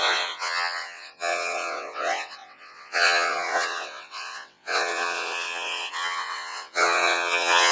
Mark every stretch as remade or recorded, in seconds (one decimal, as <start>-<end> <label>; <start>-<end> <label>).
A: 0.0-7.7 remade